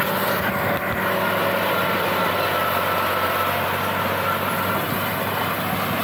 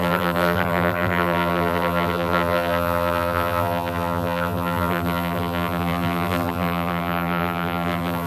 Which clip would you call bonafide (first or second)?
first